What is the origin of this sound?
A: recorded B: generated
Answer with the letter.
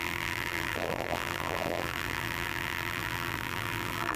B